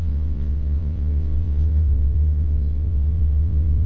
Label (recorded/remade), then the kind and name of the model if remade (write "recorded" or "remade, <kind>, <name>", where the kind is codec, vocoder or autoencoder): remade, vocoder, WaveNeXt